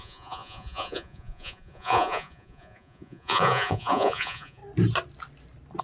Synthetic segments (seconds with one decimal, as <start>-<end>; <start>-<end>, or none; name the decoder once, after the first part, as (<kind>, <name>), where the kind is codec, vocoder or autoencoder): 0.0-4.6 (vocoder, Vocos)